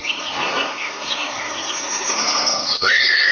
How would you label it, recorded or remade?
remade